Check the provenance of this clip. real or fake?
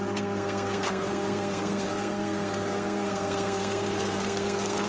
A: fake